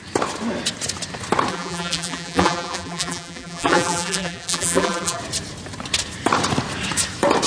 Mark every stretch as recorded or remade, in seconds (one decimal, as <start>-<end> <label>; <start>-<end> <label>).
0.0-1.5 recorded; 1.5-5.2 remade; 5.2-7.5 recorded